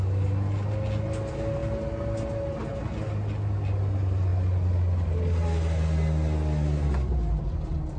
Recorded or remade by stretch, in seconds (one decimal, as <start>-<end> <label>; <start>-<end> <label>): 0.0-8.0 recorded